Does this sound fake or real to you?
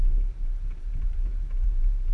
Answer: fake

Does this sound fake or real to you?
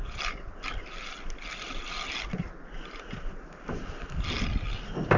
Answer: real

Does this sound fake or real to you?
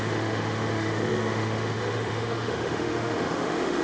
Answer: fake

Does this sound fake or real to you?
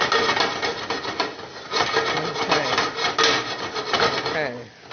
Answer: real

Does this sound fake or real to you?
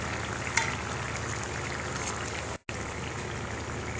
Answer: real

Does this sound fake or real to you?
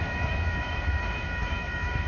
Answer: fake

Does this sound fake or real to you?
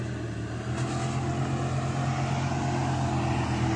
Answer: real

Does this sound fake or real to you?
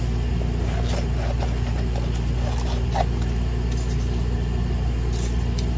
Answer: real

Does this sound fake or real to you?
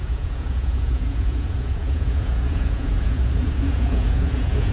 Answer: fake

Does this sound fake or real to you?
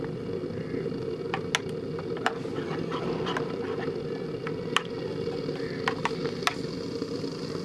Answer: real